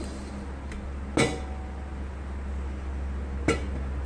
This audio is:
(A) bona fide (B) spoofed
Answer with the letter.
A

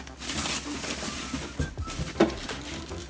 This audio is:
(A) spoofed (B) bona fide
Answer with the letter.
B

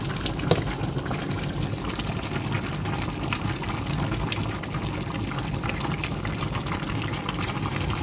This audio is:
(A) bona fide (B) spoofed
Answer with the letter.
A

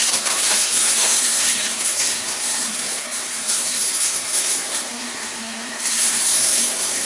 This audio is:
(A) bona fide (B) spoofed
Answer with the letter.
B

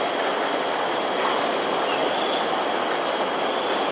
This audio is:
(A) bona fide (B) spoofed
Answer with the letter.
A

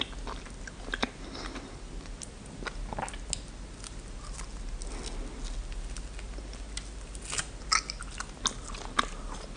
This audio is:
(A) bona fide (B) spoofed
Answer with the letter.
A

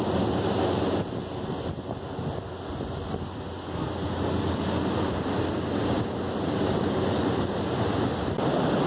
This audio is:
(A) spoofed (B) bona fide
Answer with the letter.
B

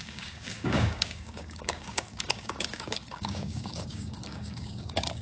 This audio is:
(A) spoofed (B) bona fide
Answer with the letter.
A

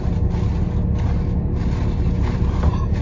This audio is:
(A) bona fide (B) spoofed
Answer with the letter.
A